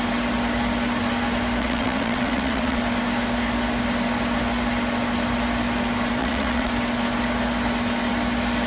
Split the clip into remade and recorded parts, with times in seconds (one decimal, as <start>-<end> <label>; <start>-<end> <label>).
0.0-1.6 recorded; 1.6-2.8 remade; 2.8-6.2 recorded; 6.2-6.7 remade; 6.7-8.7 recorded